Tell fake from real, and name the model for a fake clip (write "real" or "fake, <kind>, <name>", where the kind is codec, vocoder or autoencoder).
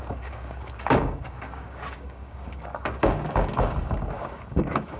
fake, codec, DAC